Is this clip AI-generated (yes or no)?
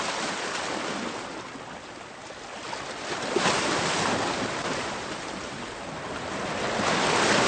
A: no